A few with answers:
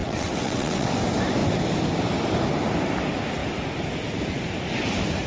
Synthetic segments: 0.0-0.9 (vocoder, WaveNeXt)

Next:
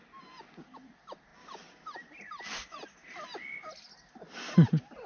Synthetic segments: none

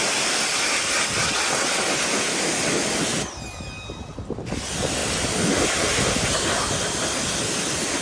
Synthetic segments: 1.2-1.8 (vocoder, WaveNeXt)

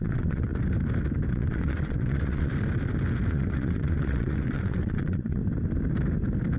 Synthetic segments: 0.0-0.5 (vocoder, WaveNeXt); 1.3-2.5; 3.3-5.4

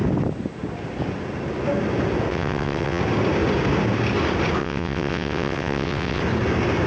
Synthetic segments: 2.3-3.0 (vocoder, WaveNeXt); 4.6-6.2

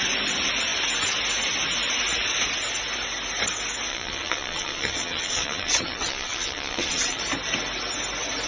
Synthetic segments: 3.9-7.2 (vocoder, WaveNeXt)